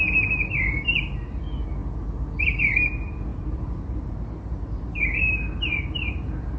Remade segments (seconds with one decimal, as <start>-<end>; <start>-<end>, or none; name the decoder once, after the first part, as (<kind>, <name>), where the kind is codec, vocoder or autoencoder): 3.3-6.6 (vocoder, BigVGAN v2)